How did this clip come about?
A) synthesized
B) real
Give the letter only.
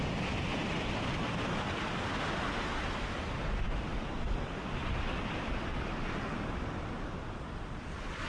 B